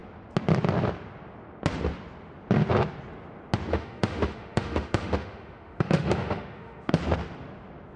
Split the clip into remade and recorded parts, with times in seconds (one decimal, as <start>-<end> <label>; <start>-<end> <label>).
0.0-3.7 recorded; 3.7-7.0 remade; 7.0-8.0 recorded